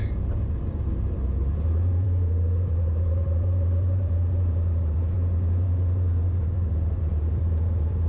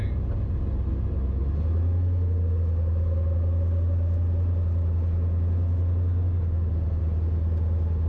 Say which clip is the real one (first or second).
second